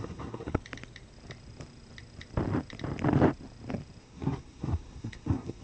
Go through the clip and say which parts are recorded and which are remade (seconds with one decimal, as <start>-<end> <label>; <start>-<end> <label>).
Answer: 0.0-0.6 remade; 0.6-4.0 recorded; 4.0-5.6 remade